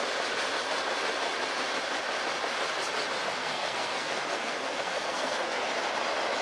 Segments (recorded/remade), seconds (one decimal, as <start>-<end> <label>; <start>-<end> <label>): 0.0-3.4 recorded; 3.4-5.7 remade; 5.7-6.4 recorded